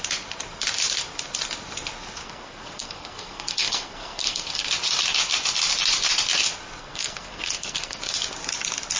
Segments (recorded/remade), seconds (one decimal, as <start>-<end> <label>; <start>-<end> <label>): 0.0-2.2 recorded; 2.2-4.7 remade; 4.7-6.8 recorded; 6.8-8.0 remade; 8.0-9.0 recorded